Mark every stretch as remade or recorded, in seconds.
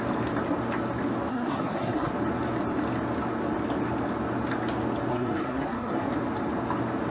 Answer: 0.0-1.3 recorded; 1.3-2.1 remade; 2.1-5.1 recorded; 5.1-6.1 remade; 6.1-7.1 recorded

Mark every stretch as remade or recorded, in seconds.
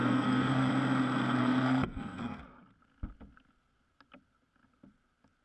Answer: 0.0-0.7 remade; 0.7-1.4 recorded; 1.4-2.4 remade; 2.4-5.4 recorded